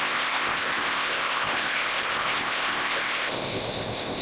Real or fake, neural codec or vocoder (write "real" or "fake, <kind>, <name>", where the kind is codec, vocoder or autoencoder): fake, codec, ZipCodec